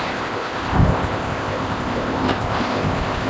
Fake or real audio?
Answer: fake